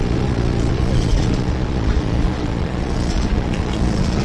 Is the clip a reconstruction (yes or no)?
yes